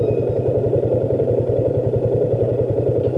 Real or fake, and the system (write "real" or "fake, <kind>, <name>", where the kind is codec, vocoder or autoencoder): fake, vocoder, BigVGAN v2